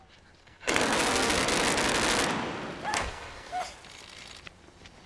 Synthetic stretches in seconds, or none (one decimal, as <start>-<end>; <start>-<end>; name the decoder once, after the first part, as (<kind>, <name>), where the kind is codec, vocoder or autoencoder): 0.4-1.5 (codec, SNAC); 2.9-3.6